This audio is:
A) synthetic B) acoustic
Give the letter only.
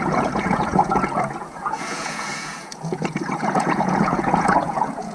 A